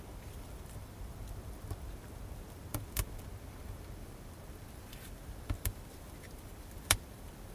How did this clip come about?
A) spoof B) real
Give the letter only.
A